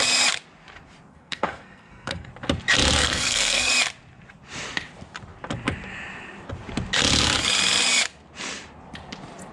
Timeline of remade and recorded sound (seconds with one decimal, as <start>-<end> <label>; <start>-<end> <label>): 0.0-1.1 recorded; 1.1-2.3 remade; 2.3-3.0 recorded; 3.0-3.7 remade; 3.7-9.5 recorded

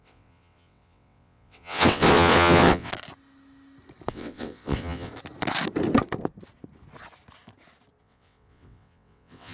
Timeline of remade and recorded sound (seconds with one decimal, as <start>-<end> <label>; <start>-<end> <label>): 0.0-2.9 remade; 2.9-4.1 recorded; 4.1-5.1 remade; 5.1-8.0 recorded; 8.0-9.5 remade

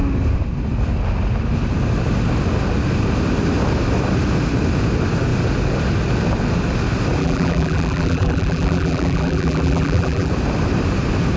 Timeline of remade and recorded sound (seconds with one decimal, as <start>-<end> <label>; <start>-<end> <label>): 0.0-7.2 recorded; 7.2-10.3 remade; 10.3-11.4 recorded

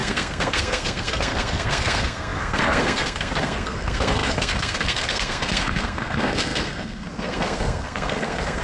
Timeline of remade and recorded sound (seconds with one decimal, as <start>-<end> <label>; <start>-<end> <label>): 0.0-8.6 remade